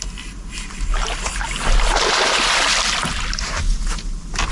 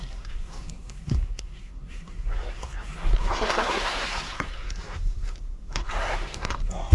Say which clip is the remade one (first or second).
second